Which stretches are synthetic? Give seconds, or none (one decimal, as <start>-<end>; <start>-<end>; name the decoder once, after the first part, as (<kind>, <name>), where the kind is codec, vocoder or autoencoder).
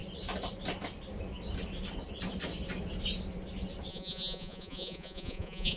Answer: 3.9-5.8 (vocoder, Vocos)